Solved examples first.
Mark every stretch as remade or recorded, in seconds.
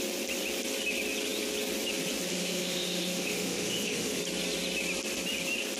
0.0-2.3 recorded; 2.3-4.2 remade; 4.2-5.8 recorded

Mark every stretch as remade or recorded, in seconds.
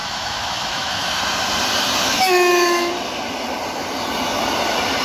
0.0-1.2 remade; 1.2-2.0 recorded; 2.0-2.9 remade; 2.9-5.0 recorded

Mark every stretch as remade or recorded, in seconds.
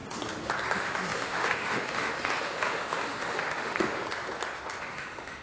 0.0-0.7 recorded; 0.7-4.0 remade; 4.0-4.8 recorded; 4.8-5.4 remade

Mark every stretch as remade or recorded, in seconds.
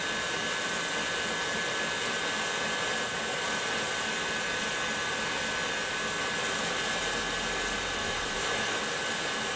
0.0-8.0 recorded; 8.0-8.8 remade; 8.8-9.6 recorded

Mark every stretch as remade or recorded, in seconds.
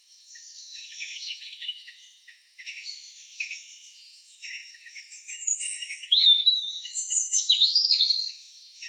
0.0-8.9 remade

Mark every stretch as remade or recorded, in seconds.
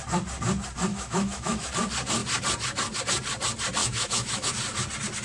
0.0-0.9 recorded; 0.9-1.7 remade; 1.7-3.8 recorded; 3.8-4.5 remade; 4.5-5.2 recorded